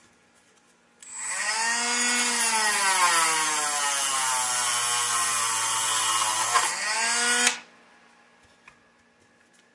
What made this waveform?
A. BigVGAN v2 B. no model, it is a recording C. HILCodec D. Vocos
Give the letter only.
B